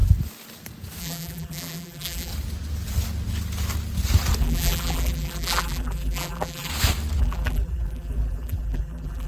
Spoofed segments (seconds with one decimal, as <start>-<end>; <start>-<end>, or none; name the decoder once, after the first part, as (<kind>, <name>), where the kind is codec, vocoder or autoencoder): 1.0-2.3 (vocoder, BigVGAN v2); 4.4-6.7; 7.2-9.3